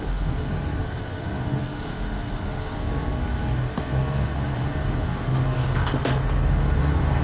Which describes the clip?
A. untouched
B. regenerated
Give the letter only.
B